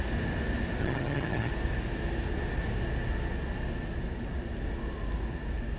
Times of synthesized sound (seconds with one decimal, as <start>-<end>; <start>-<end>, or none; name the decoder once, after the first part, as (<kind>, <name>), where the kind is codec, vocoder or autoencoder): 0.8-1.5 (vocoder, HiFi-GAN)